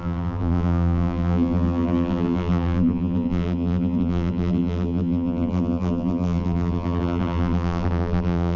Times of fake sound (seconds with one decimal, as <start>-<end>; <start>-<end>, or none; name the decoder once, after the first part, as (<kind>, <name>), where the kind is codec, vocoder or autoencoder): 0.0-8.6 (vocoder, BigVGAN v2)